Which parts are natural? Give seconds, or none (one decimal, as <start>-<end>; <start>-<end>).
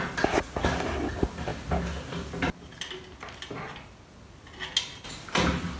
0.0-5.8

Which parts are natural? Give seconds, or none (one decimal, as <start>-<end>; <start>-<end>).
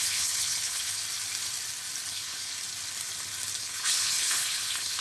1.0-2.1; 2.5-3.6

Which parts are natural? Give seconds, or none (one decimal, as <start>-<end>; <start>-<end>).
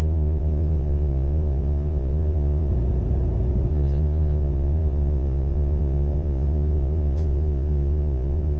2.7-3.7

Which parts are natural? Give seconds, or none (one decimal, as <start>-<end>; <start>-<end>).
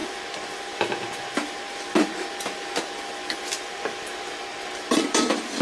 none